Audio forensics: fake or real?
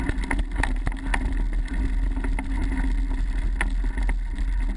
real